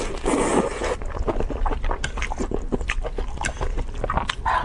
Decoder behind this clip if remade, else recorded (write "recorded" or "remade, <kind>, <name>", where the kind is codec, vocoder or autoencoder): recorded